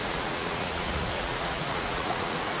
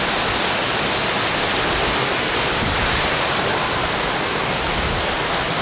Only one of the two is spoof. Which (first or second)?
first